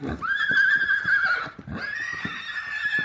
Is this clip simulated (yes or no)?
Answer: no